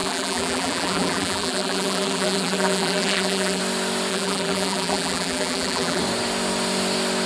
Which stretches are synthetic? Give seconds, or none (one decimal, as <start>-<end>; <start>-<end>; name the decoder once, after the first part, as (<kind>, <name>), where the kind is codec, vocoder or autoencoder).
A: 0.0-3.6 (vocoder, BigVGAN v2); 4.1-6.0